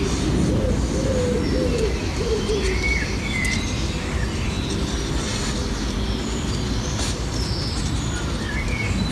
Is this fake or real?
real